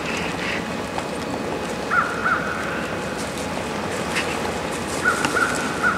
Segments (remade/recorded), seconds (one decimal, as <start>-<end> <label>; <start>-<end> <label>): 0.0-6.0 recorded